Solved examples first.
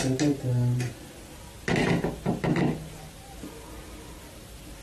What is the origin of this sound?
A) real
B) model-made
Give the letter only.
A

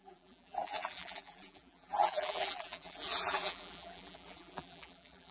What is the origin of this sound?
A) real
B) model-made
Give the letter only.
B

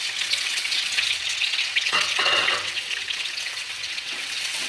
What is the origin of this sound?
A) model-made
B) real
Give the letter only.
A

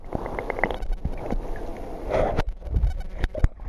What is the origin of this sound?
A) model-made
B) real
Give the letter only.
B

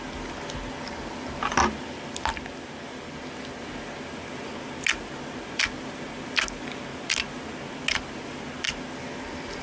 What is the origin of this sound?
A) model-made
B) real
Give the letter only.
B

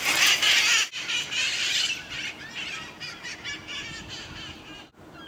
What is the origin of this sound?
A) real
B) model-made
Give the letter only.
A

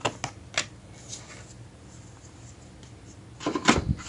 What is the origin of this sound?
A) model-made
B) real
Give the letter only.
B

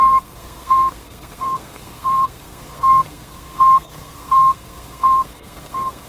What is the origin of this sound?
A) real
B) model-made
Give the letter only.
B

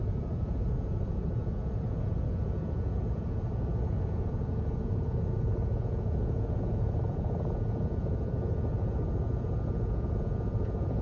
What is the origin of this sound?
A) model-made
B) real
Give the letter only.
A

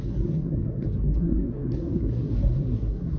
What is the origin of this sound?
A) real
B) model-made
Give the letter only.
B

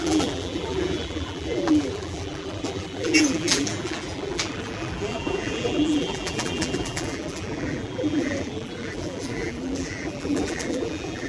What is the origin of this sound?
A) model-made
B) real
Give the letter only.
A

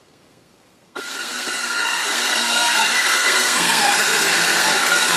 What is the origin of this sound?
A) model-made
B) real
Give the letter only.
A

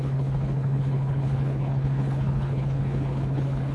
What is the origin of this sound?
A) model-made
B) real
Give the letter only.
A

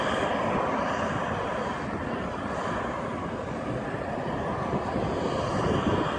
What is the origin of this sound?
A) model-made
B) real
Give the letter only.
B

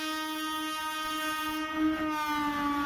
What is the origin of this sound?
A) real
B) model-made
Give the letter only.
A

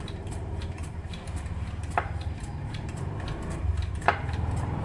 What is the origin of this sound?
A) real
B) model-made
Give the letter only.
B